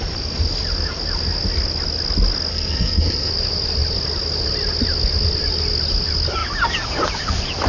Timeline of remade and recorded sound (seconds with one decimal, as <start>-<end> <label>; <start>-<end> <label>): 0.0-2.5 recorded; 2.5-3.3 remade; 3.3-7.7 recorded